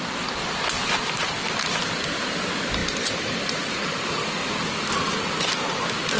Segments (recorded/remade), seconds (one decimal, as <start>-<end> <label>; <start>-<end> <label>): 0.0-2.8 recorded; 2.8-3.4 remade; 3.4-4.4 recorded; 4.4-5.2 remade; 5.2-6.2 recorded